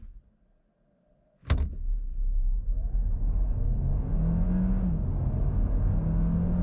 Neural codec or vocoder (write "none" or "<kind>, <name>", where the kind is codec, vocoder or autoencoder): none